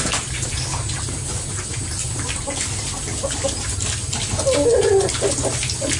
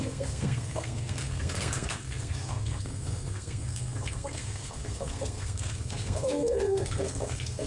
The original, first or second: first